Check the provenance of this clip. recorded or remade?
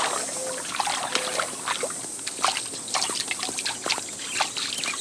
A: recorded